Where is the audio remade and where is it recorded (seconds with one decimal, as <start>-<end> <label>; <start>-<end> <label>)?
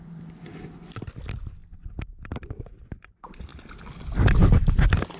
0.0-5.2 recorded